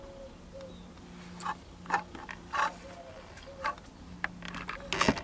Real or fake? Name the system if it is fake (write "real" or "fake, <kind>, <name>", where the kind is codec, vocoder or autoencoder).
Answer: real